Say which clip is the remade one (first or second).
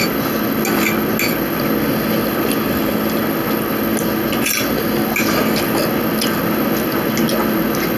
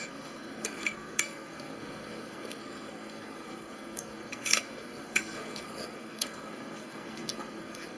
second